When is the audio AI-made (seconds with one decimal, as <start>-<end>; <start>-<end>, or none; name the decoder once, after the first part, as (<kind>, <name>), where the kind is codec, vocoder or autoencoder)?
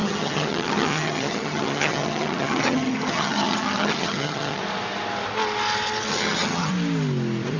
0.0-4.6 (vocoder, HiFi-GAN); 6.1-6.7